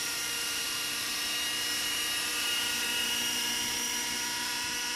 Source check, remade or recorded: remade